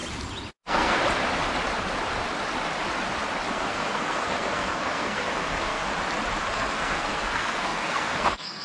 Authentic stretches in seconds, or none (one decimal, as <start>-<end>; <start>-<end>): 0.0-0.5; 1.0-3.5; 5.8-6.4